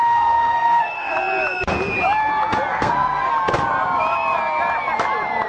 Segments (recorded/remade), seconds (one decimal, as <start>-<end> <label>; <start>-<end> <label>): 0.0-1.1 remade; 1.1-2.7 recorded; 2.7-3.3 remade; 3.3-5.5 recorded